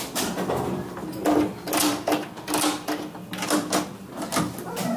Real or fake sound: real